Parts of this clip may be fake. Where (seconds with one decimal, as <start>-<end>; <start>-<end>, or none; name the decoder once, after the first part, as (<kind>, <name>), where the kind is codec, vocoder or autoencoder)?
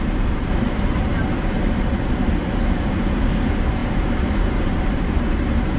0.0-1.1 (vocoder, BigVGAN v2); 1.9-5.8